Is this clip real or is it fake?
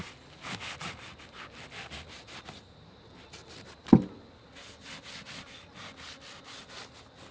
real